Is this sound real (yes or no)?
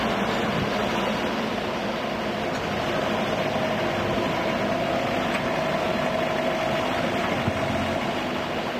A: yes